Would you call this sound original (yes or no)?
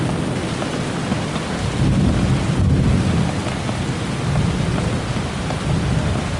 yes